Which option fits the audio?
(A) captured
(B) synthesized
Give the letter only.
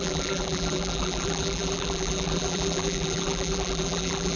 B